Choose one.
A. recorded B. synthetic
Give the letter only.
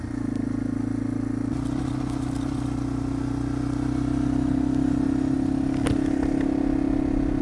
A